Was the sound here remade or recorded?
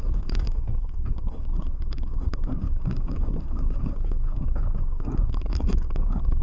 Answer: remade